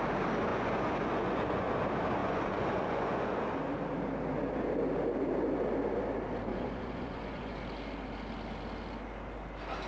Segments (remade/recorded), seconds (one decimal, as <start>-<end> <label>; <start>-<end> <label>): 0.0-0.5 recorded; 0.5-1.7 remade; 1.7-2.2 recorded; 2.2-3.4 remade; 3.4-6.5 recorded; 6.5-7.6 remade; 7.6-9.9 recorded